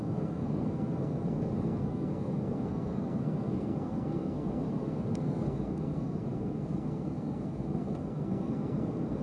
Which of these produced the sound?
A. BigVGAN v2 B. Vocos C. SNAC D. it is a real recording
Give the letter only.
C